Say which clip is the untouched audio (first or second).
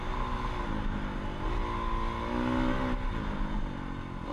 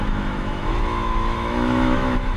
first